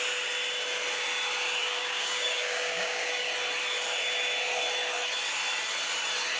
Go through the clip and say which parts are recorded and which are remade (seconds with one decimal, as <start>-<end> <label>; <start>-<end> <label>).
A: 0.0-1.6 recorded; 1.6-3.3 remade; 3.3-6.4 recorded